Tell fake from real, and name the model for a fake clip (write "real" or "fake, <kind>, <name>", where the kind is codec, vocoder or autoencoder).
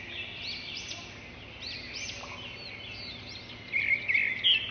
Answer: real